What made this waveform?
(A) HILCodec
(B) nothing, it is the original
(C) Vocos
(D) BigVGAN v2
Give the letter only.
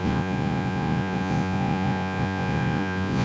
C